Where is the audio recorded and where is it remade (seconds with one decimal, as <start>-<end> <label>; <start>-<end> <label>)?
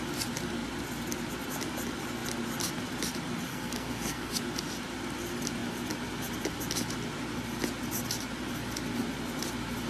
0.0-3.5 recorded; 3.5-4.3 remade; 4.3-9.9 recorded